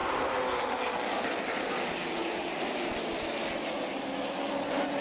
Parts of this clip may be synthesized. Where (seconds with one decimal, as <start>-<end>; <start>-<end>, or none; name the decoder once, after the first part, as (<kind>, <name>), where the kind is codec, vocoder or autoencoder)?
none